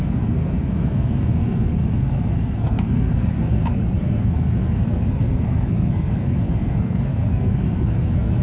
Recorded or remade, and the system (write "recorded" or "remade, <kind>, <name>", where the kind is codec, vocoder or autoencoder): remade, codec, SNAC